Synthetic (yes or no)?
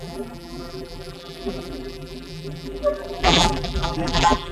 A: yes